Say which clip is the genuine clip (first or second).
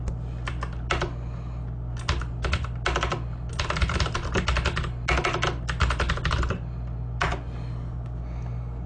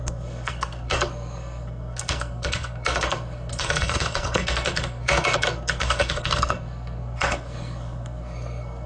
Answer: first